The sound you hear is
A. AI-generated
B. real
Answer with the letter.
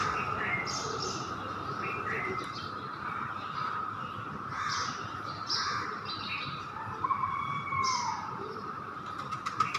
A